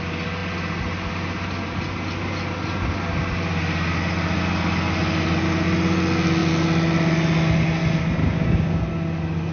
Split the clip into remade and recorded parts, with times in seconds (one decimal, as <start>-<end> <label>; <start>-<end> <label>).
0.0-8.2 recorded; 8.2-8.8 remade; 8.8-9.5 recorded